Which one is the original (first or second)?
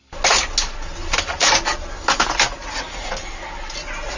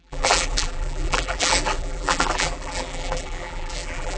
first